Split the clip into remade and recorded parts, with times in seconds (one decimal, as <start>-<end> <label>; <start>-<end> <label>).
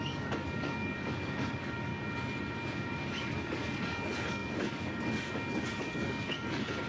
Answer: 0.0-1.9 remade; 1.9-3.1 recorded; 3.1-6.9 remade